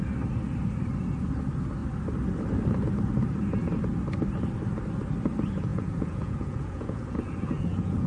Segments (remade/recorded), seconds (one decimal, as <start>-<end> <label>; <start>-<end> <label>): 0.0-5.7 recorded; 5.7-8.1 remade